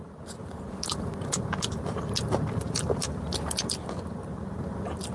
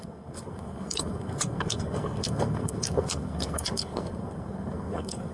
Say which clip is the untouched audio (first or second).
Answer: first